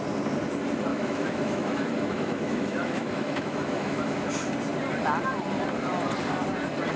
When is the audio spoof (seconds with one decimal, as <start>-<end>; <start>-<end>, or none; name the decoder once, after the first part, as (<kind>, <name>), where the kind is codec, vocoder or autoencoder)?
0.9-4.3 (autoencoder, DAC-VAE)